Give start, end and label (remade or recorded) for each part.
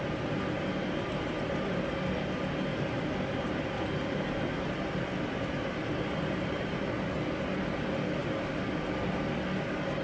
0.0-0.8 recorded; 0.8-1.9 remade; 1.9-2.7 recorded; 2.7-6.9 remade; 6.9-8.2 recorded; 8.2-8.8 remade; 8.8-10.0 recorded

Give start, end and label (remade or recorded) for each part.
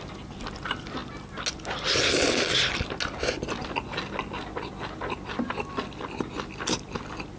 0.0-7.4 recorded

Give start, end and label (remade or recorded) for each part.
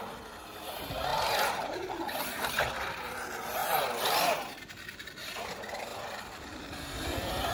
0.0-3.6 recorded; 3.6-4.5 remade; 4.5-5.9 recorded; 5.9-7.5 remade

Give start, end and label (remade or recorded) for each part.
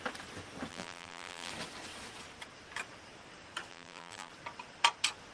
0.0-0.7 recorded; 0.7-1.5 remade; 1.5-3.7 recorded; 3.7-4.3 remade; 4.3-5.3 recorded